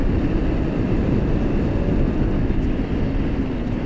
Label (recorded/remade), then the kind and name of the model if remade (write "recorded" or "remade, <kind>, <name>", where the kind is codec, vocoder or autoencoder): recorded